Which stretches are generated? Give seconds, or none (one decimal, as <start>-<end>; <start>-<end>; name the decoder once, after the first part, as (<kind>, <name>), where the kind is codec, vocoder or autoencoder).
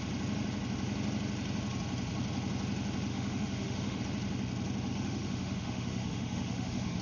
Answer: 3.1-4.0 (autoencoder, DAC-VAE); 4.9-7.0